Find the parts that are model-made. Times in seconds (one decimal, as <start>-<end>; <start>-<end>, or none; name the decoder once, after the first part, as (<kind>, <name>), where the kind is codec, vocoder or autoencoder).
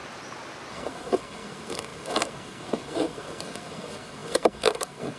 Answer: 0.7-5.2 (codec, SNAC)